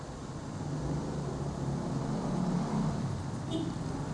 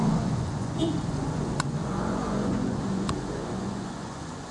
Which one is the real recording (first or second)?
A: first